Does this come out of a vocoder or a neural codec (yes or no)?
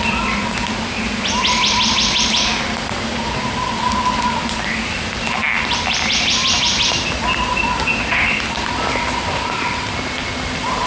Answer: no